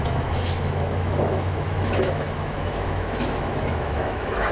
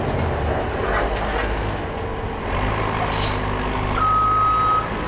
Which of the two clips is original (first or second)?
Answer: second